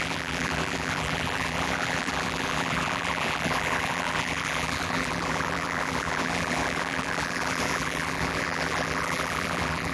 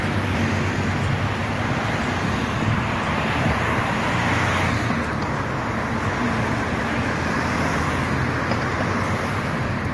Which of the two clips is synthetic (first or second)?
first